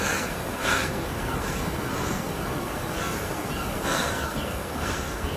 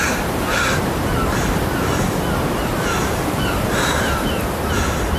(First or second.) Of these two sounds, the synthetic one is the first